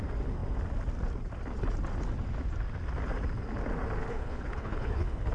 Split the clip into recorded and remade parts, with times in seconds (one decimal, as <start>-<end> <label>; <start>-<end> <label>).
0.0-4.1 recorded; 4.1-5.3 remade